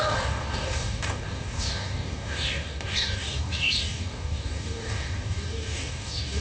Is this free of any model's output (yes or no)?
no